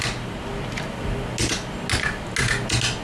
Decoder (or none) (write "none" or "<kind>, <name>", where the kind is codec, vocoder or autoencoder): none